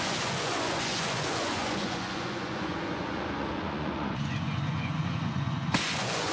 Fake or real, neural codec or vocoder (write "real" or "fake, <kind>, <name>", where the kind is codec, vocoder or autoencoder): fake, vocoder, Vocos